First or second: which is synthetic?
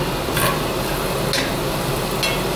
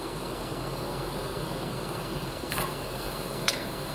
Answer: second